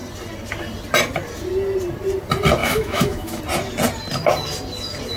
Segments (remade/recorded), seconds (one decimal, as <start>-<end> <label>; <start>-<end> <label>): 0.0-2.6 recorded; 2.6-3.4 remade; 3.4-5.2 recorded